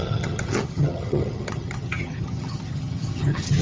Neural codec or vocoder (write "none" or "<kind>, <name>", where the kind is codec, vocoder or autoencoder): vocoder, HiFi-GAN